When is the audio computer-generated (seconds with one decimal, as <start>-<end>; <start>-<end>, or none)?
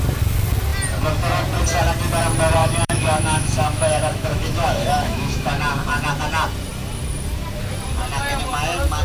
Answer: 2.6-5.5